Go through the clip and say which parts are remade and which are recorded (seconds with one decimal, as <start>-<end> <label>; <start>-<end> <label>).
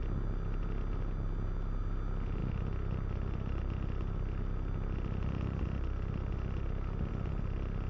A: 0.0-7.9 recorded